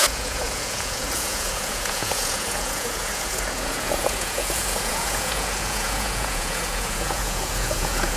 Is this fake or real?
fake